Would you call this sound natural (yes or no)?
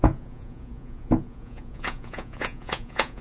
no